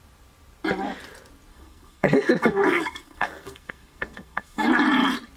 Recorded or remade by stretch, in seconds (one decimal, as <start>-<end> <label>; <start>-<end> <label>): 0.0-1.5 recorded; 1.5-4.7 remade; 4.7-5.4 recorded